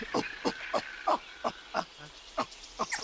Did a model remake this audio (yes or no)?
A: no